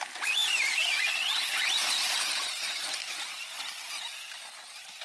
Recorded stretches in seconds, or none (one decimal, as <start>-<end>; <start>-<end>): 0.0-5.0